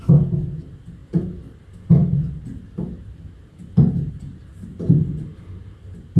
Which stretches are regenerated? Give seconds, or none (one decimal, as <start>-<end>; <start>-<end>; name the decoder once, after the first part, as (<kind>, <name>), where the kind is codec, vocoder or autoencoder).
none